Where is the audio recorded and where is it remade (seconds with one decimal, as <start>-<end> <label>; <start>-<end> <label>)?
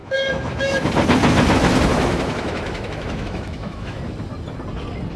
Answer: 0.0-0.9 remade; 0.9-1.9 recorded; 1.9-4.0 remade; 4.0-5.2 recorded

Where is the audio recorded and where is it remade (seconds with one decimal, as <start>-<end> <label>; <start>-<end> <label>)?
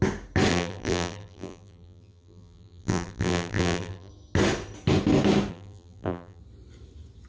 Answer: 0.0-0.5 recorded; 0.5-4.1 remade; 4.1-5.5 recorded; 5.5-6.4 remade; 6.4-7.3 recorded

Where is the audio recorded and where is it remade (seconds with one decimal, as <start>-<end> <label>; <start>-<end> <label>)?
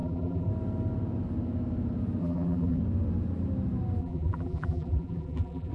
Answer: 0.0-0.5 remade; 0.5-2.2 recorded; 2.2-2.8 remade; 2.8-4.0 recorded; 4.0-5.7 remade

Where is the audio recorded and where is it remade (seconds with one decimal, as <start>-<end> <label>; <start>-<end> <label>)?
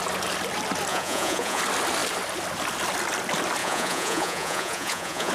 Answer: 0.0-0.9 recorded; 0.9-1.6 remade; 1.6-3.6 recorded; 3.6-5.3 remade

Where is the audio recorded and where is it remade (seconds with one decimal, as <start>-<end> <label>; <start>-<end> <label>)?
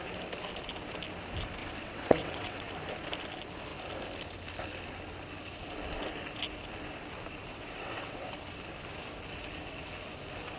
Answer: 0.0-1.6 recorded; 1.6-2.7 remade; 2.7-7.5 recorded; 7.5-8.3 remade; 8.3-10.6 recorded